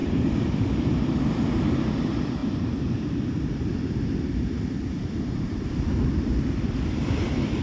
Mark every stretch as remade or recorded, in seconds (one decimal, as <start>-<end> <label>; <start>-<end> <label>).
0.0-2.4 remade; 2.4-3.0 recorded; 3.0-7.6 remade